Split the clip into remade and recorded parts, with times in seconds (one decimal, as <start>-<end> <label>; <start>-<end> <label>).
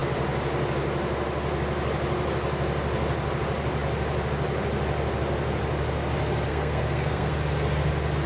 0.0-6.5 recorded; 6.5-7.3 remade; 7.3-8.3 recorded